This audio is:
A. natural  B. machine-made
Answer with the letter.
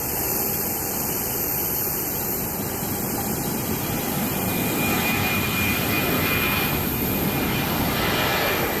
B